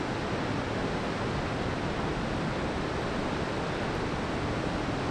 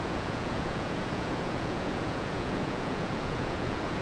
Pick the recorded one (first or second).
first